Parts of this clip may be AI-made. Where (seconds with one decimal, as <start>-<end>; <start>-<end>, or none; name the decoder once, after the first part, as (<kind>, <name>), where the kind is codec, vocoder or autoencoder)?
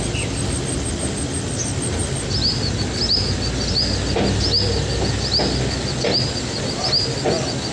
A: none